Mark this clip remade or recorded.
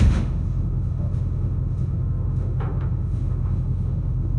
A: remade